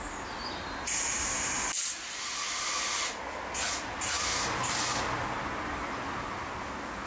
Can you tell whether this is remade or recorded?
recorded